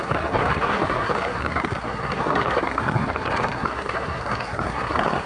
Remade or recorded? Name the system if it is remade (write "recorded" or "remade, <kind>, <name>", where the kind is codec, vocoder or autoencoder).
remade, codec, SNAC